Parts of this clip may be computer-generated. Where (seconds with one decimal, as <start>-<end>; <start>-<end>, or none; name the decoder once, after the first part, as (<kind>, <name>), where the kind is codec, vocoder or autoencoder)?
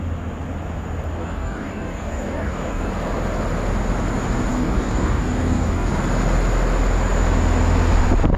1.2-2.9 (codec, DAC); 4.5-5.9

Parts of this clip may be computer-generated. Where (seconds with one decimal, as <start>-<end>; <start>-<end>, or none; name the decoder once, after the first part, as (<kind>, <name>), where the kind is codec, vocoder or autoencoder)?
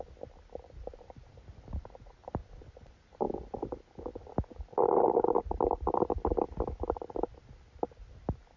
none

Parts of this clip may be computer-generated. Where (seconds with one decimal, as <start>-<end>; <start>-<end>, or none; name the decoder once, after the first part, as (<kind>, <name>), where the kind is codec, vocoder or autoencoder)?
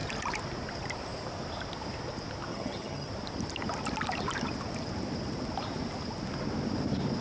2.5-3.1 (vocoder, HiFi-GAN)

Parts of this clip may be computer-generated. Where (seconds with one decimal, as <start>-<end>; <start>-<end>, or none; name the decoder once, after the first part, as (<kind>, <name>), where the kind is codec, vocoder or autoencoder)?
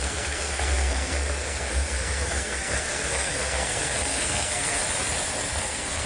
0.0-4.8 (codec, SNAC); 5.6-6.1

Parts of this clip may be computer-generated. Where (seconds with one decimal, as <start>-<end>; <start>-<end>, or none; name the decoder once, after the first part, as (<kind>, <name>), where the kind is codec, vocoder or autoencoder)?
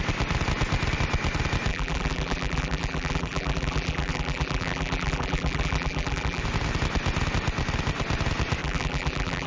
1.7-6.4 (vocoder, BigVGAN v2); 8.6-9.5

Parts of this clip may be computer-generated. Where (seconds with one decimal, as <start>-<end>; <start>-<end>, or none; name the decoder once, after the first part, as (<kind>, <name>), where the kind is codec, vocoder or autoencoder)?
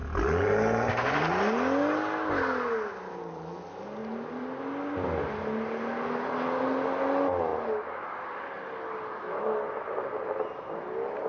none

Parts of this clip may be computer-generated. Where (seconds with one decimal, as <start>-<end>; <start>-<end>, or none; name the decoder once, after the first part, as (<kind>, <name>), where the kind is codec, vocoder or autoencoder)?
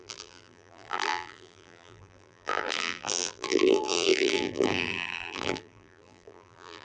0.0-6.8 (vocoder, BigVGAN v2)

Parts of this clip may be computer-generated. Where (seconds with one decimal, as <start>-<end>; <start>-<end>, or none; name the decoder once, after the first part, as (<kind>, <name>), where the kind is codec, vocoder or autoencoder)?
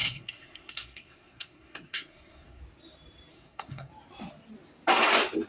0.0-2.6 (codec, SNAC); 3.3-3.9